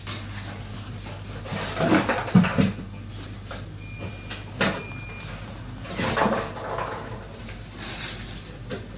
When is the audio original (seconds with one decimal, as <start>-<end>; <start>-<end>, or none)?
0.0-9.0